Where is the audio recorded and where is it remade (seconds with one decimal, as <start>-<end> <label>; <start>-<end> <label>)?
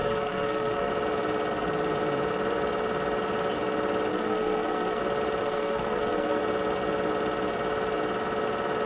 0.0-0.9 remade; 0.9-4.1 recorded; 4.1-5.0 remade; 5.0-5.4 recorded; 5.4-6.4 remade; 6.4-8.9 recorded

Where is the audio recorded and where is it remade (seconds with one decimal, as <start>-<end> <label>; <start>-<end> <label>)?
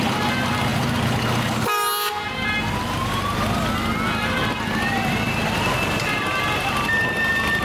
0.0-7.6 recorded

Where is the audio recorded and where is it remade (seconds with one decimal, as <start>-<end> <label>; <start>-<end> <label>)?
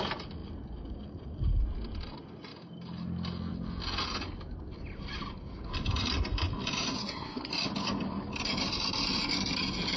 0.0-7.0 recorded; 7.0-7.5 remade; 7.5-10.0 recorded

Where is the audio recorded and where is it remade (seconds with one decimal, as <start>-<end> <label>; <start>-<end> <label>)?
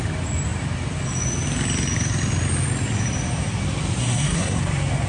0.0-4.0 recorded; 4.0-4.6 remade; 4.6-5.1 recorded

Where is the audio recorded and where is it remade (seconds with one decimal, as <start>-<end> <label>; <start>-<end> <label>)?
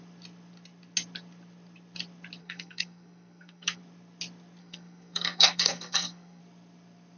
0.0-2.4 recorded; 2.4-3.8 remade; 3.8-4.6 recorded; 4.6-6.4 remade; 6.4-7.2 recorded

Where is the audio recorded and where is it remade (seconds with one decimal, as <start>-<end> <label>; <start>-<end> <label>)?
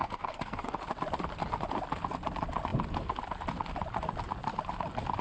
0.0-0.7 remade; 0.7-5.2 recorded